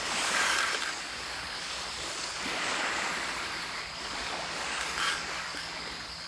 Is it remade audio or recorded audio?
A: remade